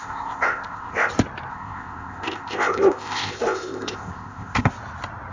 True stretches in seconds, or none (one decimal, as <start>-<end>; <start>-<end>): 1.1-1.5; 4.7-5.3